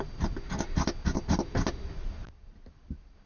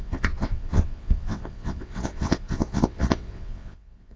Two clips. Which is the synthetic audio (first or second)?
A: second